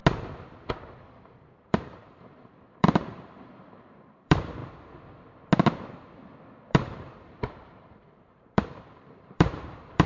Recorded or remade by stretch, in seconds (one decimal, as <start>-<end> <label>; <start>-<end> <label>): 0.0-1.1 recorded; 1.1-4.6 remade; 4.6-6.7 recorded; 6.7-10.1 remade